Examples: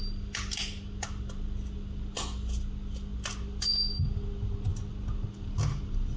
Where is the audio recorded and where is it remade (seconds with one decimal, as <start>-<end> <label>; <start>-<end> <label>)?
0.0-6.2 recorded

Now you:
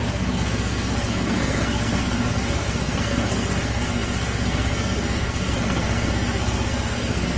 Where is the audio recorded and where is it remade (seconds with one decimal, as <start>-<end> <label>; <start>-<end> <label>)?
0.0-7.4 remade

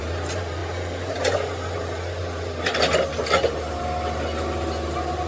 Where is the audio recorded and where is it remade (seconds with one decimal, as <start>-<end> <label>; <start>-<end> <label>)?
0.0-5.3 recorded

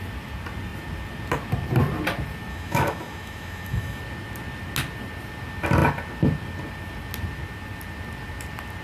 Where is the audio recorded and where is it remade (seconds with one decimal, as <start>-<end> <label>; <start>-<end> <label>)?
0.0-2.5 recorded; 2.5-4.0 remade; 4.0-8.8 recorded

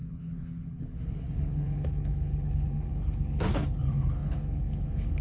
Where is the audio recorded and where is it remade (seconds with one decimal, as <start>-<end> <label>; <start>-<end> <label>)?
0.0-5.2 remade

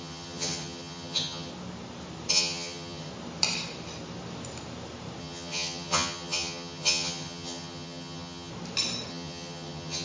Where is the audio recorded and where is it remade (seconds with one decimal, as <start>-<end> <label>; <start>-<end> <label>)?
0.0-1.5 remade; 1.5-2.3 recorded; 2.3-3.1 remade; 3.1-5.2 recorded; 5.2-8.5 remade; 8.5-9.1 recorded; 9.1-10.0 remade

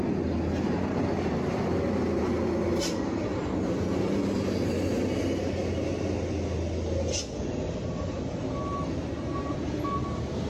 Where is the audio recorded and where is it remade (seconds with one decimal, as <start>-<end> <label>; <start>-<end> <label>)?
0.0-10.5 recorded

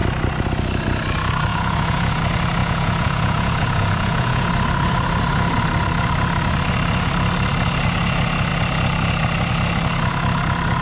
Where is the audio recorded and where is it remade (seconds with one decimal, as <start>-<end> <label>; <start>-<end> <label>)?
0.0-1.5 recorded; 1.5-2.2 remade; 2.2-2.6 recorded; 2.6-4.5 remade; 4.5-10.8 recorded